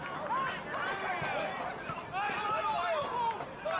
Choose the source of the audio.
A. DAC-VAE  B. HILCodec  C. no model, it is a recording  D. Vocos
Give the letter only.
C